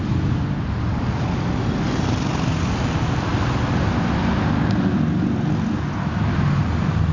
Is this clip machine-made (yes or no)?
no